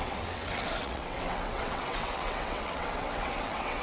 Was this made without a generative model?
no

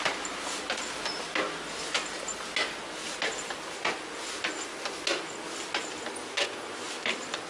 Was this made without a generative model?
yes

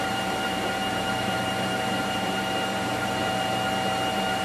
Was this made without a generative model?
no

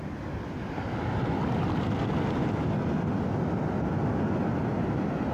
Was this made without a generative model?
yes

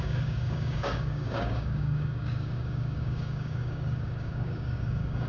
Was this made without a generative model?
no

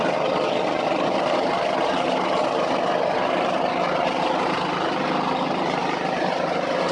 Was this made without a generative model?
yes